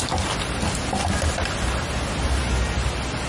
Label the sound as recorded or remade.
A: recorded